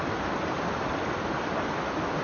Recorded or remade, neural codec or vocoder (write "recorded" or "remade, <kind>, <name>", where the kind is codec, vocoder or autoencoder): recorded